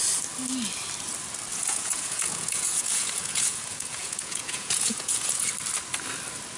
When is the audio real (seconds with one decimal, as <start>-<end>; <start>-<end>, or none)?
0.0-1.5; 5.5-6.6